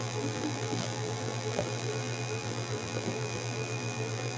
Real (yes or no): no